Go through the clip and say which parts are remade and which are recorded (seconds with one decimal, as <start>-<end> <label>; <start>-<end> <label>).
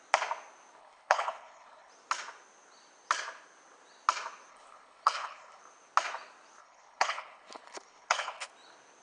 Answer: 0.0-0.8 recorded; 0.8-1.9 remade; 1.9-4.5 recorded; 4.5-5.6 remade; 5.6-6.6 recorded; 6.6-8.5 remade; 8.5-9.0 recorded